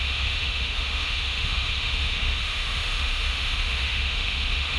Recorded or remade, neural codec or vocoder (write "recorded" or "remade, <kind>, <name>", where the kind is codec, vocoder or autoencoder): remade, autoencoder, DAC-VAE